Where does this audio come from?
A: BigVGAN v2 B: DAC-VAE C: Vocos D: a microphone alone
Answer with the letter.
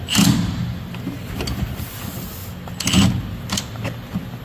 D